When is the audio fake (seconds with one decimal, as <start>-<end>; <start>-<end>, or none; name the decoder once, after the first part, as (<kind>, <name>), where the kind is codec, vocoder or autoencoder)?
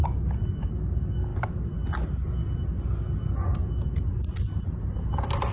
none